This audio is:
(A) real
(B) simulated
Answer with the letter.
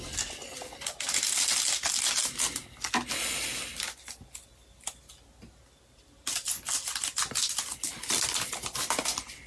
A